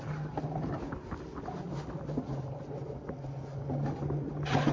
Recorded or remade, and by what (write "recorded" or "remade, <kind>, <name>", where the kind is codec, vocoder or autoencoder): recorded